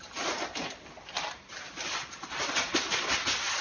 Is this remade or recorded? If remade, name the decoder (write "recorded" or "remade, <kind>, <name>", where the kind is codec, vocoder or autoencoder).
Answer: recorded